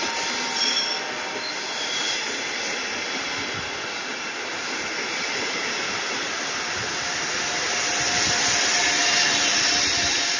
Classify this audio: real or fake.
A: real